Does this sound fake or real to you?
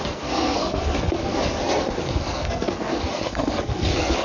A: fake